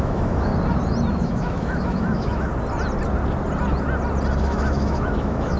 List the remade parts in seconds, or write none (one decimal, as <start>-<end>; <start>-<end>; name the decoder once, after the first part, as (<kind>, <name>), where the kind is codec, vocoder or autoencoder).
0.0-0.5 (autoencoder, DAC-VAE); 1.1-2.5; 4.4-5.6